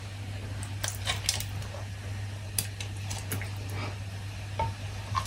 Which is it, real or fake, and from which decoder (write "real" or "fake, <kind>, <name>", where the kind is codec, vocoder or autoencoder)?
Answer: real